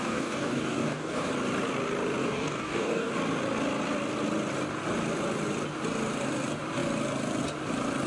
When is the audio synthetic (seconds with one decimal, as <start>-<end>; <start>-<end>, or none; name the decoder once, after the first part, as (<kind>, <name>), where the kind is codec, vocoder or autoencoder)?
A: 0.0-1.3 (codec, DAC); 2.2-3.1